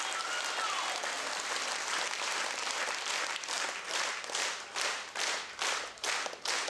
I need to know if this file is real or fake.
real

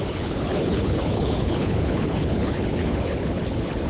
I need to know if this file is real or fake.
fake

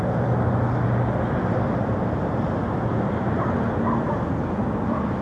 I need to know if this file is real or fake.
real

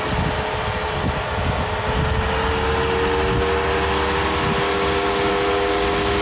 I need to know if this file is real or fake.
real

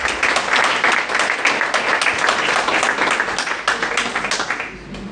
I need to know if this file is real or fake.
real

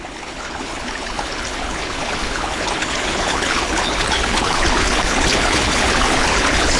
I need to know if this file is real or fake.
fake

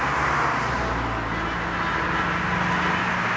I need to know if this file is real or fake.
real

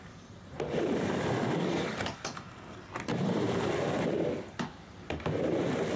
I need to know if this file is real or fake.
real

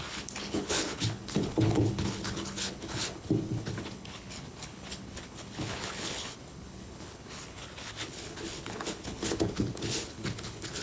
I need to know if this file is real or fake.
fake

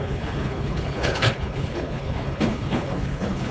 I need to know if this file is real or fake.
fake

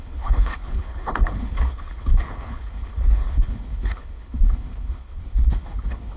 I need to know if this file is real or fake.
fake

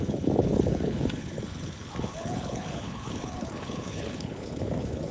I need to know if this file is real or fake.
fake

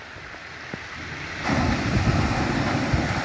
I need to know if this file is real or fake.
real